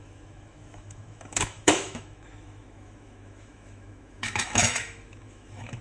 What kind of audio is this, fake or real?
fake